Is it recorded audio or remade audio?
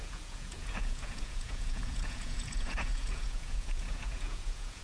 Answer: remade